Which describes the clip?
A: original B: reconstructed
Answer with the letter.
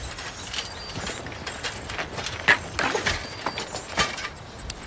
A